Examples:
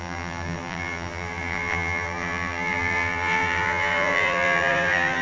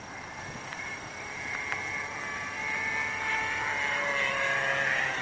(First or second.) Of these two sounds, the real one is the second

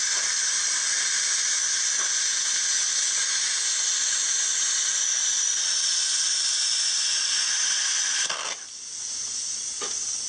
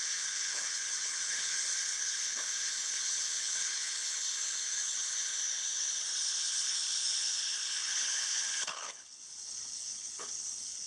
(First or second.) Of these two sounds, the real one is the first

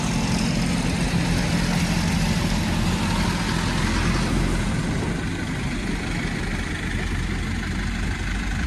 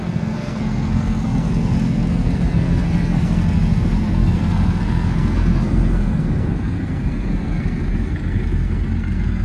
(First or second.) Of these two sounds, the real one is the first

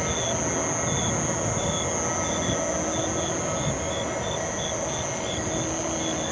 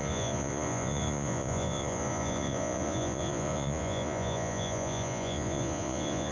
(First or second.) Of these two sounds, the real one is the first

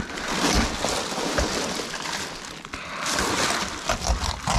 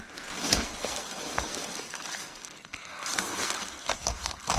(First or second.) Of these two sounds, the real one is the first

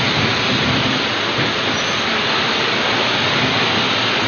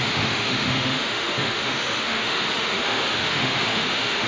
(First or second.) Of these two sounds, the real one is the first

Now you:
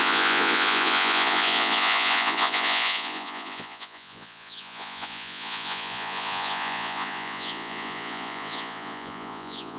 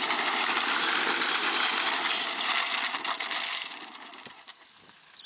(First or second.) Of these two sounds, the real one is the second